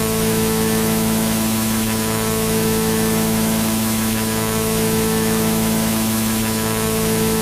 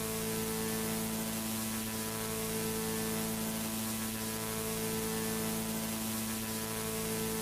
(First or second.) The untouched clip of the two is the second